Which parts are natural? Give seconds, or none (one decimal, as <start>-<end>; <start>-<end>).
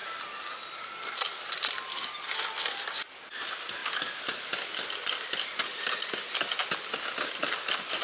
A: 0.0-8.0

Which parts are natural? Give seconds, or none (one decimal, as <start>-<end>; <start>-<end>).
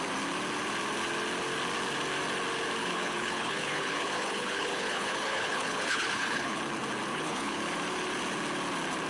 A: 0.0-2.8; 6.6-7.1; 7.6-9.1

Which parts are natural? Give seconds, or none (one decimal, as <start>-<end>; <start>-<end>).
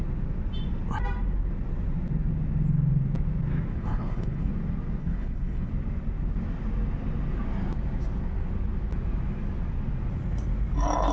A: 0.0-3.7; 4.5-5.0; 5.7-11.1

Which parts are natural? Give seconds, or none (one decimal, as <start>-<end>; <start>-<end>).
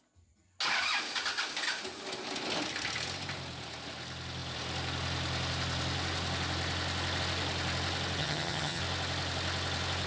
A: 0.0-8.2; 8.8-10.1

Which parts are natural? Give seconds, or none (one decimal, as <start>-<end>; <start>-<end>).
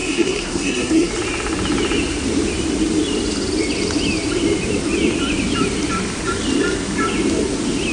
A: 1.1-7.9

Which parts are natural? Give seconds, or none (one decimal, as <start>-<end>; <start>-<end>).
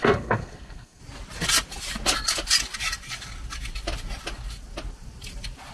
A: 1.0-5.7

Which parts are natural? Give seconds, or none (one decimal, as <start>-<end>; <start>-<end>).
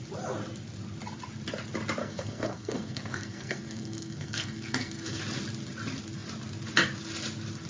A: 0.0-2.0; 5.2-7.7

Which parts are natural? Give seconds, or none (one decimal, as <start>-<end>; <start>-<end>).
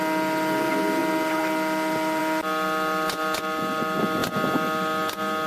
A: 0.0-5.5